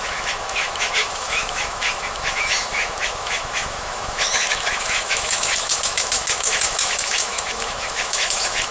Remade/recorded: remade